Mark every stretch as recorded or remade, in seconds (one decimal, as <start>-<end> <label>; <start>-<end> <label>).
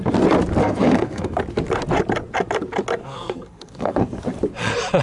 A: 0.0-0.6 recorded; 0.6-1.4 remade; 1.4-3.0 recorded; 3.0-4.2 remade; 4.2-5.0 recorded